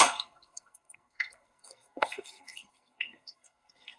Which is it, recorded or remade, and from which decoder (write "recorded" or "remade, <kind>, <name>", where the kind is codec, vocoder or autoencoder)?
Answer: remade, codec, SNAC